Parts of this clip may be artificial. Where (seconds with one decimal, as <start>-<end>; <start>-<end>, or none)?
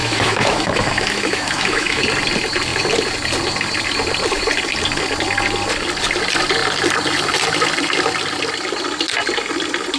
0.0-2.0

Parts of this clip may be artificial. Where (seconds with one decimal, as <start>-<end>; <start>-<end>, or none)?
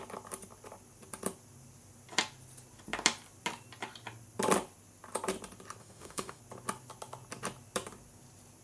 5.8-6.4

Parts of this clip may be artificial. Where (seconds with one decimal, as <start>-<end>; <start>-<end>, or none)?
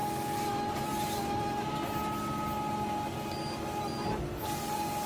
none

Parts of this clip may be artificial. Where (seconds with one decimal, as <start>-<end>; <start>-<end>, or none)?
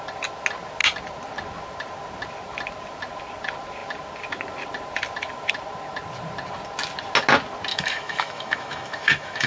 7.7-9.5